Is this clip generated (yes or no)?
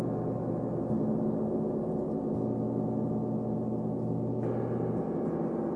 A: no